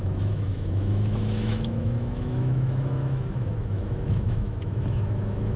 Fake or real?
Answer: fake